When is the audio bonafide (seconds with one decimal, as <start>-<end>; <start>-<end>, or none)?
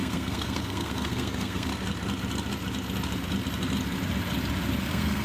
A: 1.7-4.8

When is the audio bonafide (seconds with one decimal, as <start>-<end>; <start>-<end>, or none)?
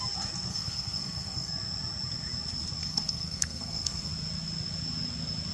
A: 0.0-0.5; 1.5-2.8; 4.1-5.5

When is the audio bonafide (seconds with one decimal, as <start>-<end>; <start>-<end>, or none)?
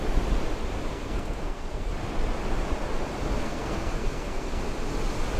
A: 0.0-0.9; 1.9-3.4; 4.6-5.4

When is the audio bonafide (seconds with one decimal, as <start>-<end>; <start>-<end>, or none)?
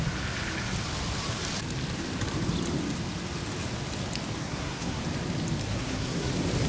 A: 0.0-4.4; 5.0-5.7; 6.3-6.7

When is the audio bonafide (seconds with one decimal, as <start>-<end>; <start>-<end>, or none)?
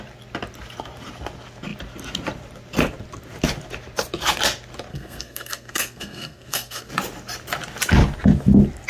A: 0.0-4.9; 6.9-8.9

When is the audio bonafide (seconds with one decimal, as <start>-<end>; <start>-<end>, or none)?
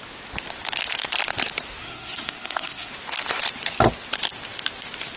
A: 0.0-1.8; 2.9-5.2